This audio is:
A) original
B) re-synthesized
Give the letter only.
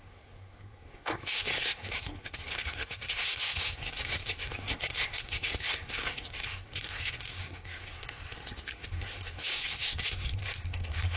B